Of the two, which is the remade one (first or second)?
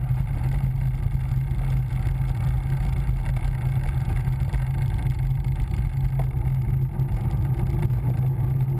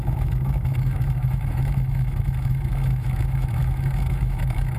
second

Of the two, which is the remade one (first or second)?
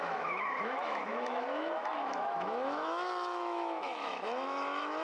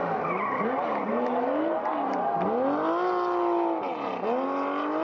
first